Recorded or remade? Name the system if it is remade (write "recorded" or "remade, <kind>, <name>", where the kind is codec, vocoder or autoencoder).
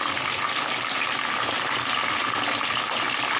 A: remade, vocoder, BigVGAN v2